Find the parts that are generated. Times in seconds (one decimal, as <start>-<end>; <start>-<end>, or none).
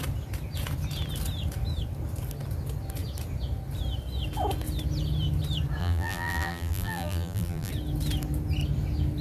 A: 5.8-7.7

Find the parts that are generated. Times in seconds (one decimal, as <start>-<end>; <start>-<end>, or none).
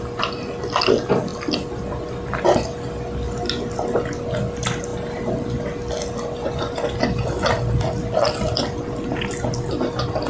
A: none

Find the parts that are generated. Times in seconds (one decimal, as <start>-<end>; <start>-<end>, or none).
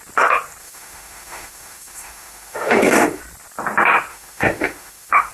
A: 0.6-3.2; 4.1-5.3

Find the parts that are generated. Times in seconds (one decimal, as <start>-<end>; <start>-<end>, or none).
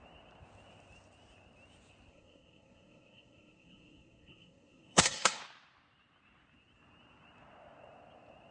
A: 2.1-5.4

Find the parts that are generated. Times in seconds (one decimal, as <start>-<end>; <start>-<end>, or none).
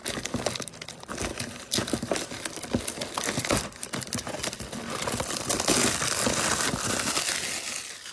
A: none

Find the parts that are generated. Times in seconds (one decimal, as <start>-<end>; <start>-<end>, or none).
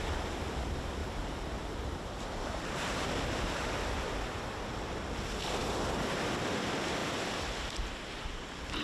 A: 1.0-3.0; 7.0-7.6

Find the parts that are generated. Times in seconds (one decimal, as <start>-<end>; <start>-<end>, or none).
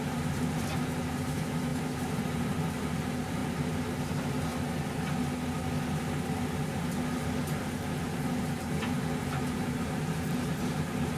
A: 0.0-3.4; 4.0-4.5; 8.4-11.2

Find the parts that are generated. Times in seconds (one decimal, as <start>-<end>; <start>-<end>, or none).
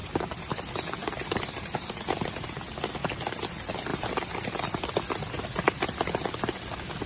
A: 0.0-0.6; 1.0-2.9; 3.9-4.6